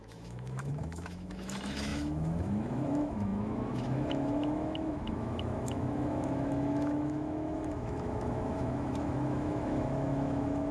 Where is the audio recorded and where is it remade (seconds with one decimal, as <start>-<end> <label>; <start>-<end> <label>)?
0.0-10.7 remade